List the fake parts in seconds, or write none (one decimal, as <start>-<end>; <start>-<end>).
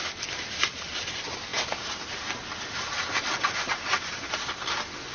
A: none